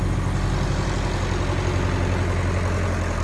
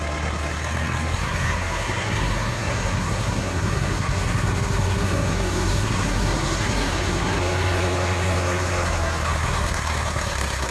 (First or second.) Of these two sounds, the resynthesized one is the second